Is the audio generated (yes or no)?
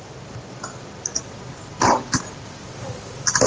yes